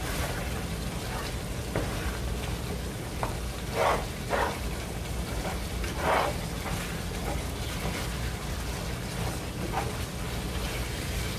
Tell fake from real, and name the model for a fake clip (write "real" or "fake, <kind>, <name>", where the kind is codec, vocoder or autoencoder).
real